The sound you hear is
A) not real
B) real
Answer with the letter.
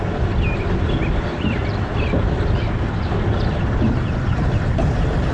B